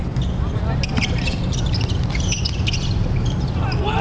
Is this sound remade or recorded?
recorded